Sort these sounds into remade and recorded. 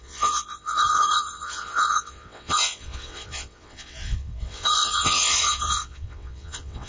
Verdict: remade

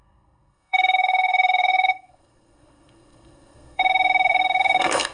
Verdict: remade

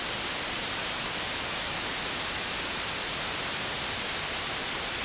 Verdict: recorded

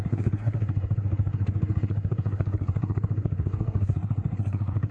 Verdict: remade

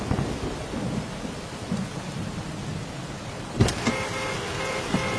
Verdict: recorded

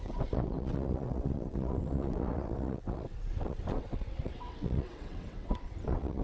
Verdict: remade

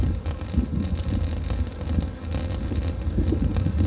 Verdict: recorded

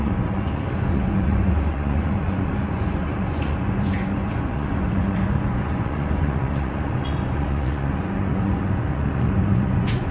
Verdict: remade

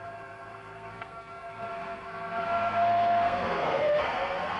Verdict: remade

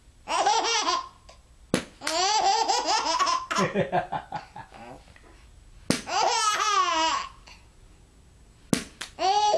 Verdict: recorded